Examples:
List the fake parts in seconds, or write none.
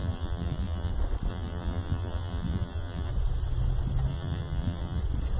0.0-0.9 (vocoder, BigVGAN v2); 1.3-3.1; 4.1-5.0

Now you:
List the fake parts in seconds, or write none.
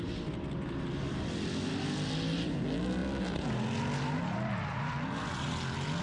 none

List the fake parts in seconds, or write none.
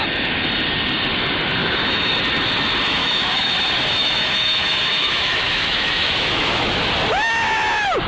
1.6-2.1 (autoencoder, DAC-VAE); 3.0-3.5; 4.0-6.9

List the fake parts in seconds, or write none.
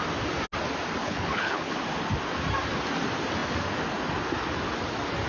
1.0-1.7 (codec, HILCodec)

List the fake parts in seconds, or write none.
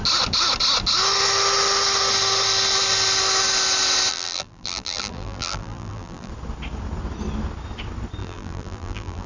4.1-6.3 (vocoder, BigVGAN v2); 8.2-9.3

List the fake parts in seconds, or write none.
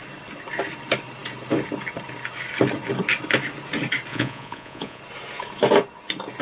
4.1-5.0 (vocoder, Vocos)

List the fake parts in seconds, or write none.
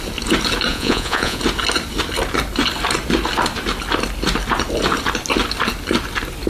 0.7-1.4 (vocoder, Vocos)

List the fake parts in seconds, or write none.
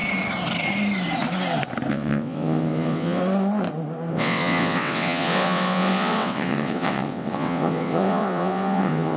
1.9-3.2 (vocoder, WaveNeXt); 4.1-9.2